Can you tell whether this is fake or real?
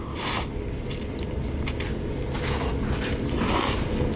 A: real